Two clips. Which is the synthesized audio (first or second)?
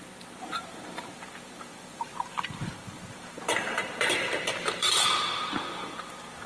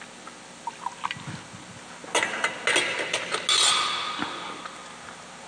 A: first